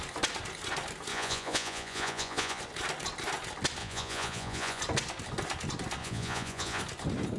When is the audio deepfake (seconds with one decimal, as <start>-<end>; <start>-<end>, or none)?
1.1-2.6; 3.8-4.8; 6.0-6.8